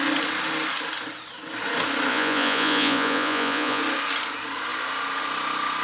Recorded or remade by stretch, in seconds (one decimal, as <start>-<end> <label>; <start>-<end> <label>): 0.0-2.1 recorded; 2.1-3.8 remade; 3.8-5.8 recorded

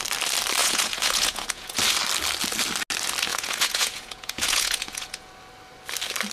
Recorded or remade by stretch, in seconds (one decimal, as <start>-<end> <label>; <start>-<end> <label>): 0.0-0.6 recorded; 0.6-1.8 remade; 1.8-3.3 recorded; 3.3-5.3 remade; 5.3-6.3 recorded

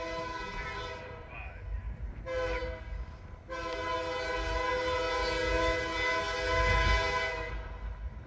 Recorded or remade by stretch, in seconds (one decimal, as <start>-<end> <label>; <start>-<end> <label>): 0.0-8.3 recorded

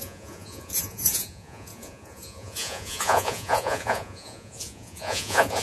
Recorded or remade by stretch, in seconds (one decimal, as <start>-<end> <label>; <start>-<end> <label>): 0.0-5.6 remade

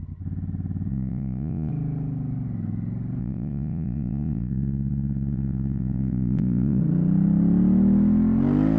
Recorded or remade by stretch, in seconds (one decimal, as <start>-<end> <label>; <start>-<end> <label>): 0.0-0.9 recorded; 0.9-1.7 remade; 1.7-3.2 recorded; 3.2-6.8 remade; 6.8-8.8 recorded

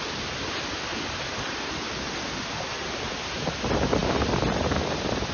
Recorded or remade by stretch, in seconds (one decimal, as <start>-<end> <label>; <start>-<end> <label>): 0.0-5.3 recorded